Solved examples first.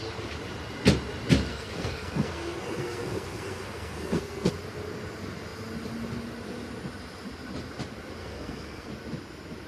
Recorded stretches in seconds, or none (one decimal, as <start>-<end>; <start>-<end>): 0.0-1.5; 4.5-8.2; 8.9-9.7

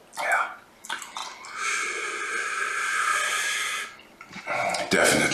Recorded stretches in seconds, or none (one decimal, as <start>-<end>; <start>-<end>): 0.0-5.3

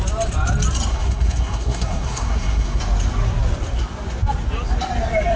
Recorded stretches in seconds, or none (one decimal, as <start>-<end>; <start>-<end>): 0.0-0.9; 2.8-5.4

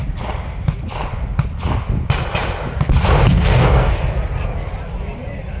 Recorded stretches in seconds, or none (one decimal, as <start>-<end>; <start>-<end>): 0.0-3.4; 3.9-5.6

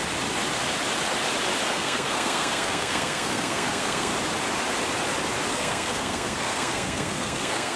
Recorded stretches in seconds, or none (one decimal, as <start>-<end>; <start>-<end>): 0.0-1.7; 4.1-5.5

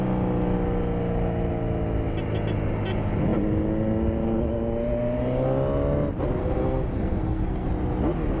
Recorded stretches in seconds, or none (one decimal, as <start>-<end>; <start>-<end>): 0.0-6.4; 7.7-8.4

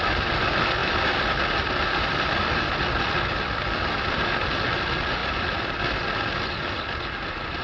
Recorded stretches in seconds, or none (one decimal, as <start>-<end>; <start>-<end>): 0.0-7.6

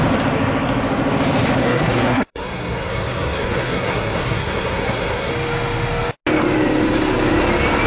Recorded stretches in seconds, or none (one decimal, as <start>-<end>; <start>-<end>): 0.0-1.6; 5.3-7.9